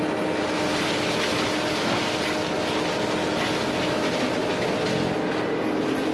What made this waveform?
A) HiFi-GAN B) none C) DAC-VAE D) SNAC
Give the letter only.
B